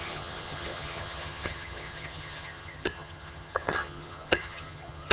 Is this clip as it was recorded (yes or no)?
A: no